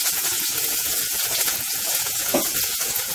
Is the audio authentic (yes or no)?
no